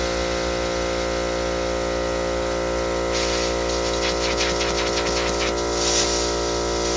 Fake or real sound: real